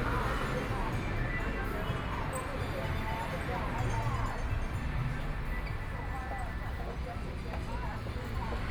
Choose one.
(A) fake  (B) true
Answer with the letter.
B